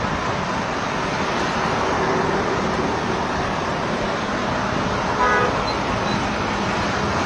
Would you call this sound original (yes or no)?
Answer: yes